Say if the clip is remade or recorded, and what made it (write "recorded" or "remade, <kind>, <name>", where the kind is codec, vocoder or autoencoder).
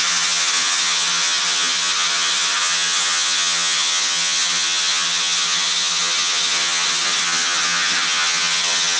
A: remade, vocoder, HiFi-GAN